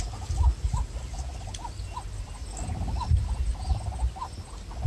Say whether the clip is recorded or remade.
recorded